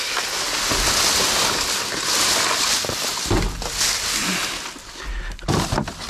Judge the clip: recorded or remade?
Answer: recorded